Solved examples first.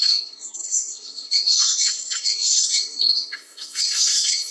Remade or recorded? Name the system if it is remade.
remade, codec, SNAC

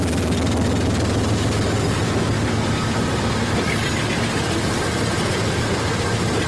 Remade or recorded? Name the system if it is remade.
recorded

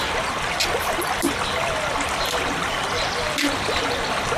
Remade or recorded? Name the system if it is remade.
recorded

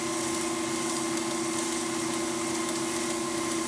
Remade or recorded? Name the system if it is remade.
recorded